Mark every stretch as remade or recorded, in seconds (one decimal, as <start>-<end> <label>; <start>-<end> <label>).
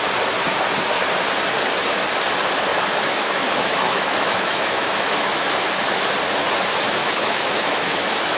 0.0-2.7 recorded; 2.7-6.1 remade; 6.1-7.0 recorded; 7.0-8.4 remade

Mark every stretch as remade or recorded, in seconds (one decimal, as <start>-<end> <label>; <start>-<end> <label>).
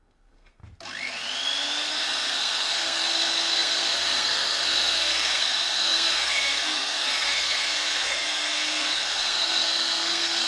0.0-0.6 remade; 0.6-1.9 recorded; 1.9-10.5 remade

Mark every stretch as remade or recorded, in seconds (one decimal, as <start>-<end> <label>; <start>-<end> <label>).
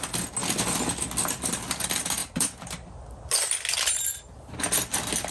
0.0-2.2 recorded; 2.2-2.9 remade; 2.9-5.3 recorded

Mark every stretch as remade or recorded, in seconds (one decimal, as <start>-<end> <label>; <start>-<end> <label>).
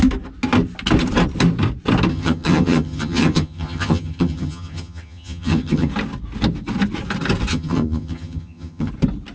0.0-2.1 recorded; 2.1-5.9 remade; 5.9-7.5 recorded; 7.5-8.9 remade; 8.9-9.3 recorded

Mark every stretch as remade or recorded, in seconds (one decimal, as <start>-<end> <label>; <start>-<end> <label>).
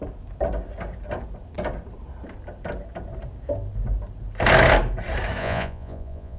0.0-5.4 recorded; 5.4-6.4 remade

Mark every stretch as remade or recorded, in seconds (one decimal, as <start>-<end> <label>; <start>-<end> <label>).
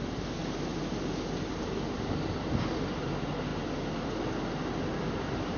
0.0-5.6 recorded